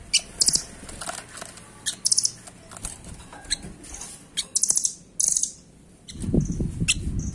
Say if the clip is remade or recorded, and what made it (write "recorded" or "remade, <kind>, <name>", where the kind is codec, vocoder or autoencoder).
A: recorded